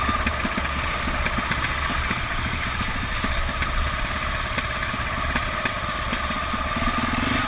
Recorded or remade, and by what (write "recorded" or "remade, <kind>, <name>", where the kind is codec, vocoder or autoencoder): recorded